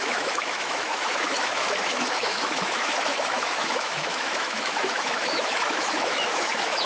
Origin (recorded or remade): remade